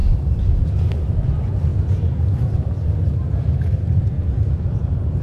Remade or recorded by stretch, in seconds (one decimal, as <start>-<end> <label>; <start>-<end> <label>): 0.0-5.2 recorded